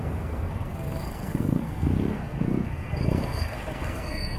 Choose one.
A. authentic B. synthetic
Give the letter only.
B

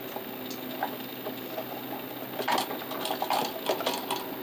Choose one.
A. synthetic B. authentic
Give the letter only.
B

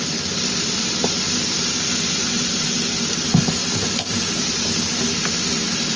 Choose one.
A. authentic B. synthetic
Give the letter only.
A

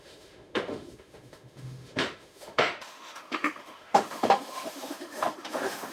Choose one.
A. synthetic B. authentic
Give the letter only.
A